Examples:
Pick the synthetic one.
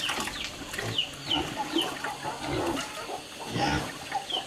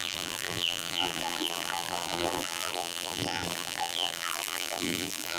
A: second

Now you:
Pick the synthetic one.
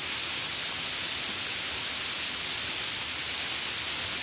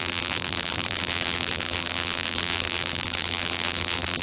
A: second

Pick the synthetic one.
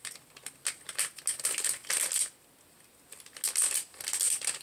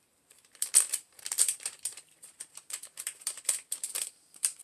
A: second